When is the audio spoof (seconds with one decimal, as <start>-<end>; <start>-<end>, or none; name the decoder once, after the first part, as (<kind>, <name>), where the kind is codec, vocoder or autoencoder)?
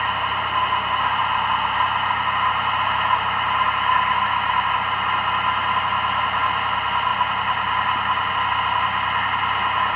none